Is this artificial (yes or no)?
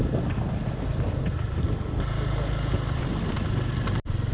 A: no